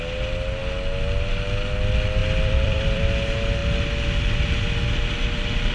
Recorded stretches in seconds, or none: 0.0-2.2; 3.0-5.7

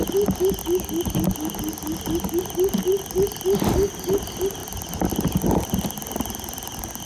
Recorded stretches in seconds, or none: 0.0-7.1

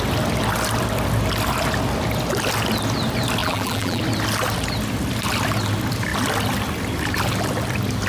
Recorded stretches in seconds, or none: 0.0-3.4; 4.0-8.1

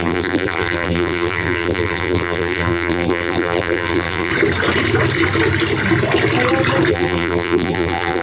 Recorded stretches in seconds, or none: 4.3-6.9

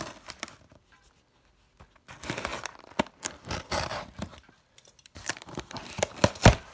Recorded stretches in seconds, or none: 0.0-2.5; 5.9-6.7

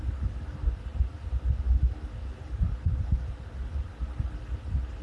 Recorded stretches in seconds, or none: 0.0-5.0